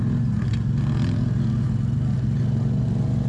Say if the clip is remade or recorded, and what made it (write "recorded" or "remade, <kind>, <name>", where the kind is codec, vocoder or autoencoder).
recorded